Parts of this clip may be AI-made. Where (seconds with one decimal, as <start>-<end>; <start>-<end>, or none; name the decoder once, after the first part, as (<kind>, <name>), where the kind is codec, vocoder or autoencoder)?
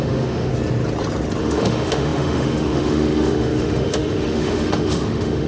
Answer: 0.0-0.5 (autoencoder, DAC-VAE); 1.4-5.5